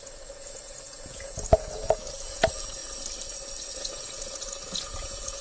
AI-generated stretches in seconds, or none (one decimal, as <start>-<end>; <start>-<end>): 0.0-2.8; 3.7-5.4